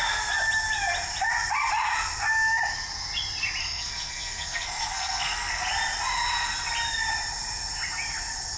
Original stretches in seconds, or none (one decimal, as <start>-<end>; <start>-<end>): 0.0-3.6; 5.7-8.6